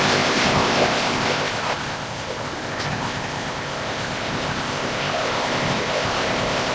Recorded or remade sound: remade